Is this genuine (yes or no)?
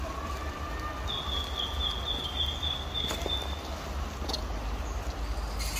yes